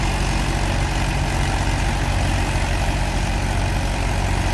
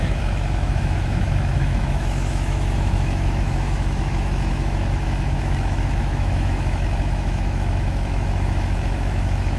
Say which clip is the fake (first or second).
second